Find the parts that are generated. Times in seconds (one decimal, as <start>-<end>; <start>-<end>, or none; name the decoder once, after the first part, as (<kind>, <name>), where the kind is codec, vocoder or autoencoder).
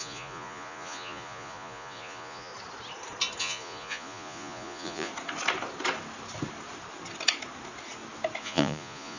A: 0.0-2.5 (vocoder, Vocos); 3.4-5.1; 8.4-9.2